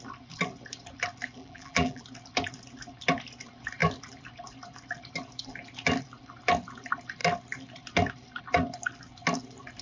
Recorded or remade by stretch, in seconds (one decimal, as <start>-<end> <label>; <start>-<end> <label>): 0.0-1.4 recorded; 1.4-2.0 remade; 2.0-9.8 recorded